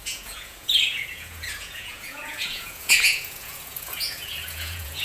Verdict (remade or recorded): remade